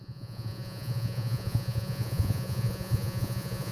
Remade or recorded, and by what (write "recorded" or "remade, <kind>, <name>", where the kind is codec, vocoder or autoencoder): remade, vocoder, Vocos